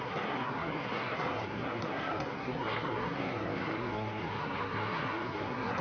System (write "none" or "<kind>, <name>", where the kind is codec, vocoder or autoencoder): codec, SNAC